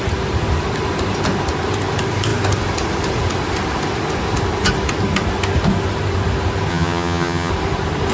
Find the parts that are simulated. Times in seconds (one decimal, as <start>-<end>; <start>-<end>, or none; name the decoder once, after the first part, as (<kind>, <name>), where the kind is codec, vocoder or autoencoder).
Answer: 6.7-7.5 (vocoder, HiFi-GAN)